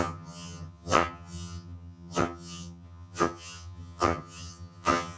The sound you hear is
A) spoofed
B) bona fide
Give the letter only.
A